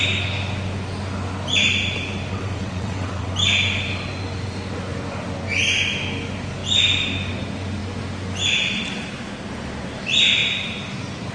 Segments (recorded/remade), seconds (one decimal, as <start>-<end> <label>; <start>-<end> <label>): 0.0-2.3 recorded; 2.3-3.3 remade; 3.3-11.3 recorded